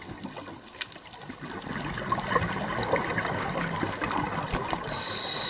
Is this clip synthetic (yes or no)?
no